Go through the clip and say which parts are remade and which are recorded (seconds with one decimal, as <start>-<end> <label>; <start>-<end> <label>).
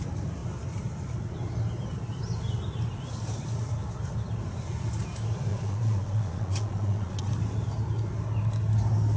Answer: 0.0-5.5 recorded; 5.5-7.3 remade; 7.3-9.2 recorded